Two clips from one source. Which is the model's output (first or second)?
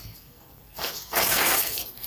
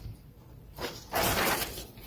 first